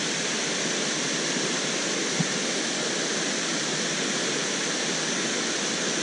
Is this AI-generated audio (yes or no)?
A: no